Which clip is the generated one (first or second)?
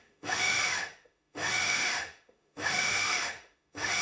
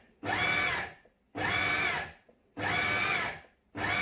first